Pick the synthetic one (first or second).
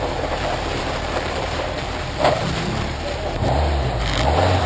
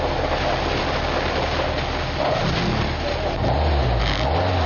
first